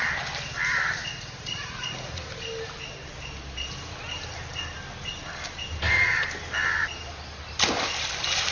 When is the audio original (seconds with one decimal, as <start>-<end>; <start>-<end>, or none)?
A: 0.0-1.1; 2.3-8.5